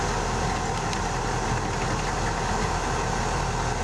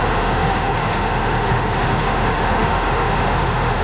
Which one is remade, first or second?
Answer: second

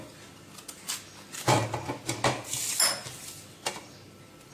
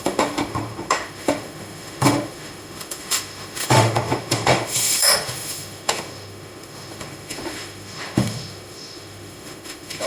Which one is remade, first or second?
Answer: second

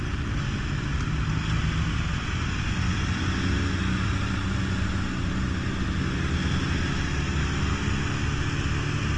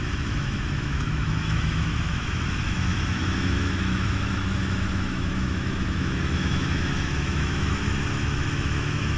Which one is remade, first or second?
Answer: second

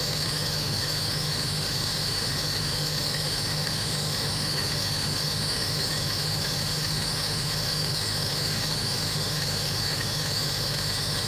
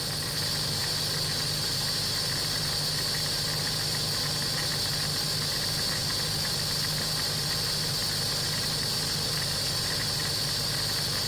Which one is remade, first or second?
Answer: first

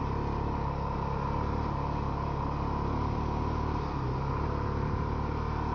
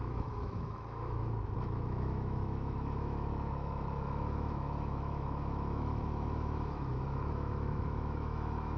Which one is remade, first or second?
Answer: second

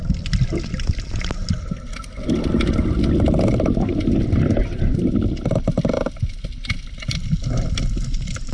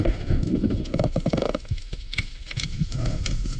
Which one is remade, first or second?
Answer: second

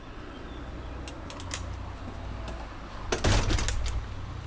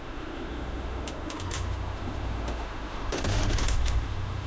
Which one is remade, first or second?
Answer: second